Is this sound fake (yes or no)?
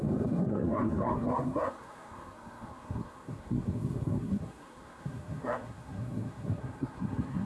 yes